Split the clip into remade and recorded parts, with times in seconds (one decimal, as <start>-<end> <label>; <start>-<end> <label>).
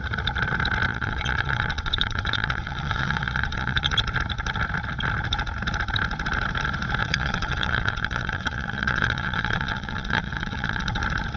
0.0-0.9 recorded; 0.9-3.9 remade; 3.9-7.0 recorded; 7.0-11.0 remade; 11.0-11.4 recorded